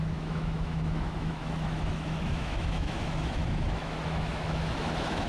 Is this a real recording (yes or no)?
no